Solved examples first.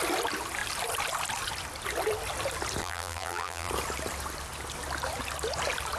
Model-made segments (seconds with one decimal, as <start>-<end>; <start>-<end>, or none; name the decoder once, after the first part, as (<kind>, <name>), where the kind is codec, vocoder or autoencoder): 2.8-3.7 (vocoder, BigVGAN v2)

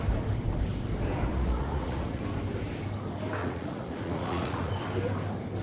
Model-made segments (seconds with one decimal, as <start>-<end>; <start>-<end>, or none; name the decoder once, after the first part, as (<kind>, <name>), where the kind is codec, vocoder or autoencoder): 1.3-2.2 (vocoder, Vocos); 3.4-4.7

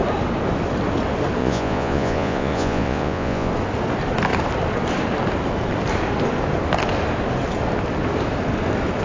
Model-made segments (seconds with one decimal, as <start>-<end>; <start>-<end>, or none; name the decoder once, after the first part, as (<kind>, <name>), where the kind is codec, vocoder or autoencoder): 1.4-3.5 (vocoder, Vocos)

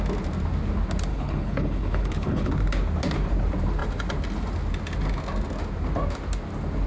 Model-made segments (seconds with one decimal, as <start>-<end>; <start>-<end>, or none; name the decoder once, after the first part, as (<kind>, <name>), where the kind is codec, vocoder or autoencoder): 1.1-2.5 (codec, HILCodec)

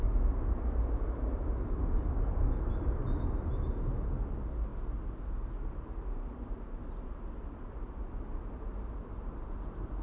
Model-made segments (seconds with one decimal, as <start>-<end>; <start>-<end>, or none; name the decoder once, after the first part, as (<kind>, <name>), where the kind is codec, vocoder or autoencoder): none